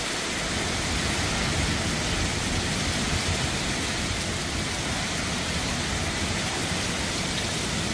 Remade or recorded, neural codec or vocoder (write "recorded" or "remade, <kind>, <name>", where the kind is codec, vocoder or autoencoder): recorded